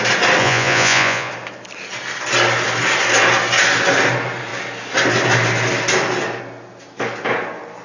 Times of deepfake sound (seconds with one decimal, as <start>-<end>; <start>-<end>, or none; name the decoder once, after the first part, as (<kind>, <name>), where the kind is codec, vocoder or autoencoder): 0.4-1.3 (vocoder, Vocos)